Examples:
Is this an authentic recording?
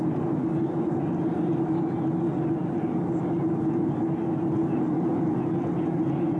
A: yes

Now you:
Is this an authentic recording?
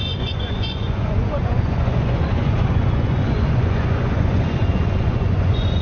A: no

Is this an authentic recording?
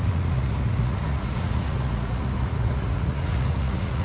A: no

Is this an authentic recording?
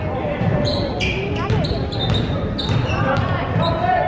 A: yes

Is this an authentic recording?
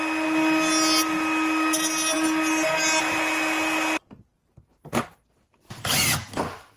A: yes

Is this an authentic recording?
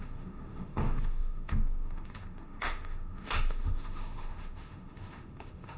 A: no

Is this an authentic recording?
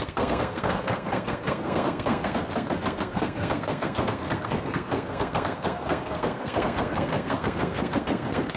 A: no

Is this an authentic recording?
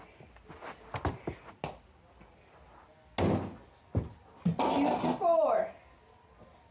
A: yes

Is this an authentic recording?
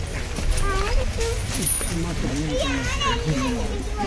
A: yes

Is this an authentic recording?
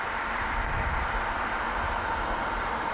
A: yes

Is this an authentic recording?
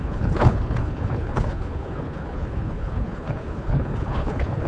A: no